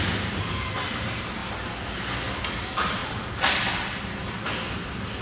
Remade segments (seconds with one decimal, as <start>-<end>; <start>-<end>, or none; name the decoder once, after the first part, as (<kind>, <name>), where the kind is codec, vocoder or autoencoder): none